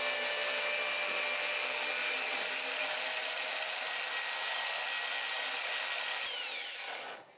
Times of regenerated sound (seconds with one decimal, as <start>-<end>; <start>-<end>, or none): 2.0-2.7